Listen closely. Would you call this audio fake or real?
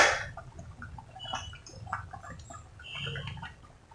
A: real